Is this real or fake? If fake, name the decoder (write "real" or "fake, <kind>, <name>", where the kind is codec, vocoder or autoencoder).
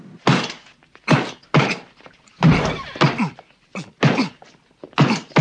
real